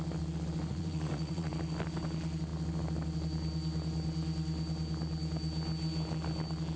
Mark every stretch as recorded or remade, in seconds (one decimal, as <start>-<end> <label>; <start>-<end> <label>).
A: 0.0-0.7 recorded; 0.7-1.5 remade; 1.5-6.8 recorded